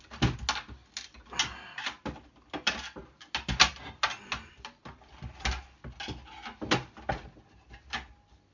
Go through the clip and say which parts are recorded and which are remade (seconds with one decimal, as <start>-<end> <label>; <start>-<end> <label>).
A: 0.0-8.5 recorded